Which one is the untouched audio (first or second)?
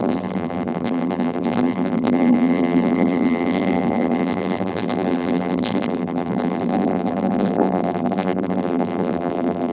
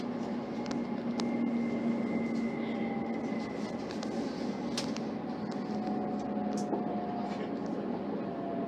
second